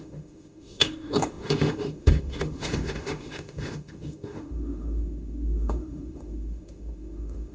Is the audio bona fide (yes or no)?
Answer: no